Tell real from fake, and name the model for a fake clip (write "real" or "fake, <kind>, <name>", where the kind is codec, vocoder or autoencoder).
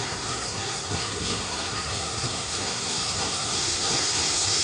fake, codec, SNAC